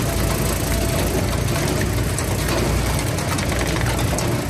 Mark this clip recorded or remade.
recorded